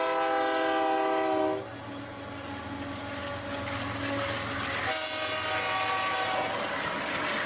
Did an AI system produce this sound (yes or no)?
no